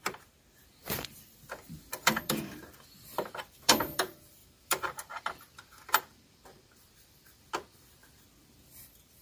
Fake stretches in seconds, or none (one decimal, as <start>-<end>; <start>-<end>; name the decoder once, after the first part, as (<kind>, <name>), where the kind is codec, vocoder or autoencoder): 0.0-9.2 (vocoder, BigVGAN v2)